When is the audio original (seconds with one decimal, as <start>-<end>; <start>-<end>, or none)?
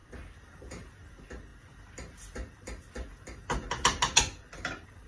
0.0-5.1